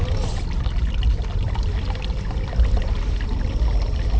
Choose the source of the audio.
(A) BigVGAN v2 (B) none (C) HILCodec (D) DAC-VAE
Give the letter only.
B